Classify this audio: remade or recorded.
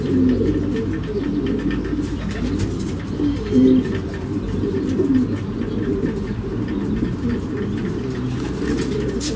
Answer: recorded